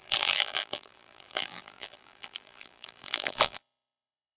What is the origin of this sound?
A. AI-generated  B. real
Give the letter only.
A